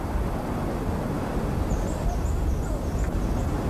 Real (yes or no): yes